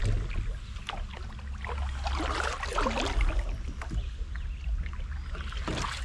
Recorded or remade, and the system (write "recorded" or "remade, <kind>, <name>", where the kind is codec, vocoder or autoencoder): recorded